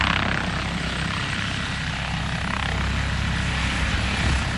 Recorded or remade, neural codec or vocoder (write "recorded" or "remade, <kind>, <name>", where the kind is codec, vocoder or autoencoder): recorded